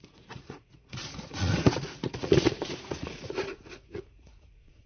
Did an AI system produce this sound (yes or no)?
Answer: yes